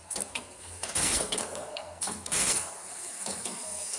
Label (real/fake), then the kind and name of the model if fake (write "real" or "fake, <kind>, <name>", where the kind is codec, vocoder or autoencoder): fake, codec, SNAC